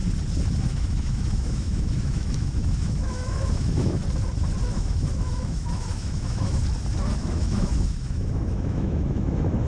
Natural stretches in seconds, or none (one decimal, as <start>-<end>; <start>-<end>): 0.0-0.6; 4.0-4.7; 6.6-7.2